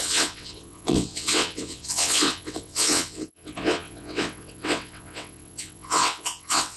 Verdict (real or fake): fake